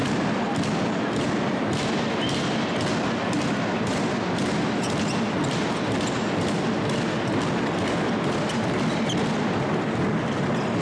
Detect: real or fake real